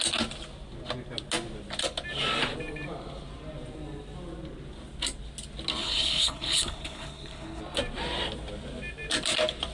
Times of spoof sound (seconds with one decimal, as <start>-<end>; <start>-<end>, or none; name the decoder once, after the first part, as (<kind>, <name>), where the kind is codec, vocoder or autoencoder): 5.8-7.6 (codec, HILCodec)